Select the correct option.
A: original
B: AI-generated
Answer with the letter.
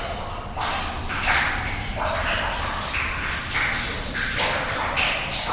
A